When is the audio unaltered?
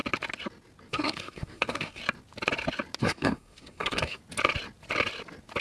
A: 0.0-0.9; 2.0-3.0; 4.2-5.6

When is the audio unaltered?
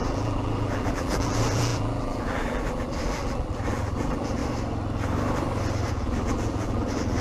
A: 4.4-5.9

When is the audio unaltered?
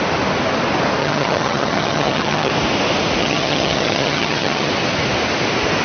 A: 0.0-1.0; 2.5-3.2; 4.7-5.8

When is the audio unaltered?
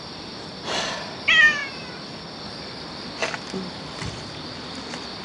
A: 0.0-5.2